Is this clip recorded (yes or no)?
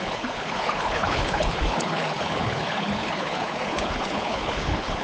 no